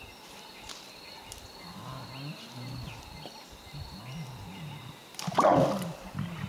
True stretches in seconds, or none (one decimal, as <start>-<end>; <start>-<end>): 0.0-6.5